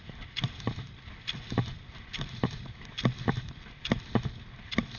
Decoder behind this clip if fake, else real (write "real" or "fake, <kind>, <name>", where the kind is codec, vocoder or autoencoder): real